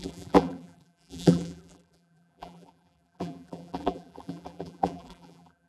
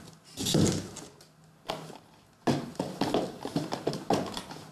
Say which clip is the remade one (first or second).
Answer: first